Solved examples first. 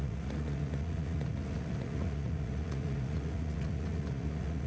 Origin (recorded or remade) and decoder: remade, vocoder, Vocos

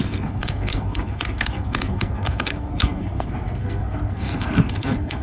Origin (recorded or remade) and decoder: remade, codec, SNAC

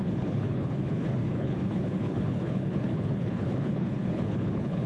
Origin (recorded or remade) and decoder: remade, codec, HILCodec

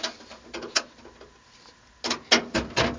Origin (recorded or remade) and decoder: recorded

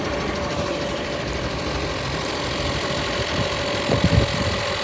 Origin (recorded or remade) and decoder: remade, vocoder, BigVGAN v2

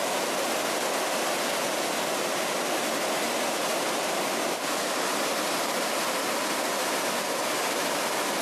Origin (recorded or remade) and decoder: recorded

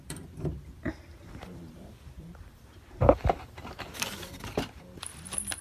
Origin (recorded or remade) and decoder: remade, vocoder, BigVGAN v2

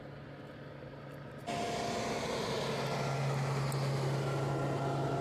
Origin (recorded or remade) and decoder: recorded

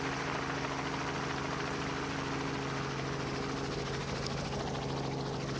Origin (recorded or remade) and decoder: recorded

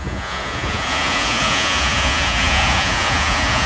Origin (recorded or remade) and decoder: remade, vocoder, Vocos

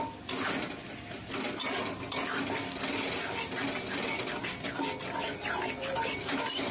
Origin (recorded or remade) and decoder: recorded